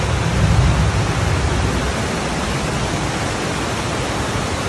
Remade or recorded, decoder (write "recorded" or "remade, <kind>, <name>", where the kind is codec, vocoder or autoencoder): recorded